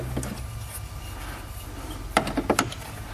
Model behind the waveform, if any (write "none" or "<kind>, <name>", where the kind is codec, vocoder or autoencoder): none